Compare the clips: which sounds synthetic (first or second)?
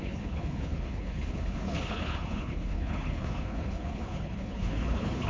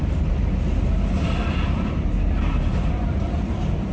first